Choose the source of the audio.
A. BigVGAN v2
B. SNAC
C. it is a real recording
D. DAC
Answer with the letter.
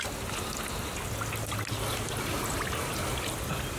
C